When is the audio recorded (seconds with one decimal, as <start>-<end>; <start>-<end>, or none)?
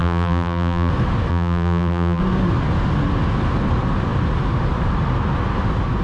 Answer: 0.9-1.3; 2.2-6.0